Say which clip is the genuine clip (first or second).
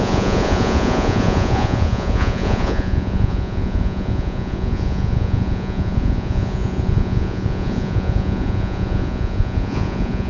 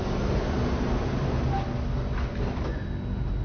second